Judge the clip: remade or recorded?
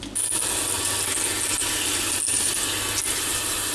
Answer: recorded